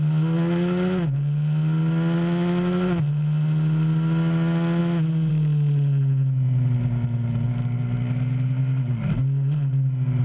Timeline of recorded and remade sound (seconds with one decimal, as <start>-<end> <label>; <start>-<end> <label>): 0.0-10.2 recorded